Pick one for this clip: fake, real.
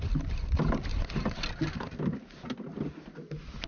real